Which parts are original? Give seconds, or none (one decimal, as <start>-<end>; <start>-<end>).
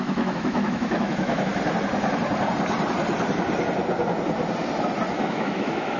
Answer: 1.5-5.1